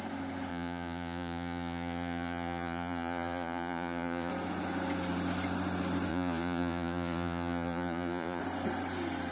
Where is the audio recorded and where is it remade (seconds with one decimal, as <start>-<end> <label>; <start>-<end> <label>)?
0.0-0.5 recorded; 0.5-4.3 remade; 4.3-6.1 recorded; 6.1-8.4 remade; 8.4-9.3 recorded

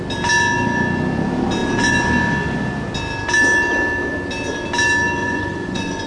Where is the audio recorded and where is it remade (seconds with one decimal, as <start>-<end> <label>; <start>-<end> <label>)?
0.0-5.2 recorded; 5.2-6.1 remade

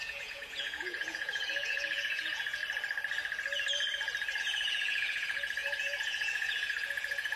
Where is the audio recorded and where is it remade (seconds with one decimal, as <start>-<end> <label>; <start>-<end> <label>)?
0.0-2.6 remade; 2.6-4.4 recorded; 4.4-7.4 remade

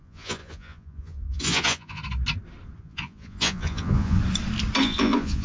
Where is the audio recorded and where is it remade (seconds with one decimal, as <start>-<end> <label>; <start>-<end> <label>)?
0.0-2.0 remade; 2.0-2.8 recorded; 2.8-4.2 remade; 4.2-4.8 recorded; 4.8-5.4 remade

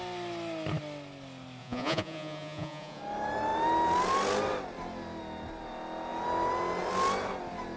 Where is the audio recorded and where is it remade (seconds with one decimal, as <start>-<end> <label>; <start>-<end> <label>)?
0.0-1.6 recorded; 1.6-3.0 remade; 3.0-7.8 recorded